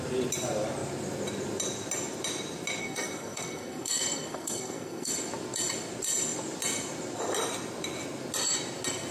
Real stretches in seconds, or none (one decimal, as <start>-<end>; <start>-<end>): 0.0-2.8; 5.1-9.1